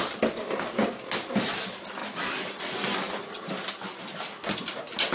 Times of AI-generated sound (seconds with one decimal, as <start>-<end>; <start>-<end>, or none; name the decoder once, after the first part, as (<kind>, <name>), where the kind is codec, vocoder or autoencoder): none